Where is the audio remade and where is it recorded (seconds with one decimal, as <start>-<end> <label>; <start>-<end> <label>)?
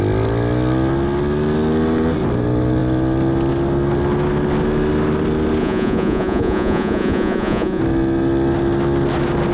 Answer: 0.0-5.6 recorded; 5.6-7.8 remade; 7.8-9.5 recorded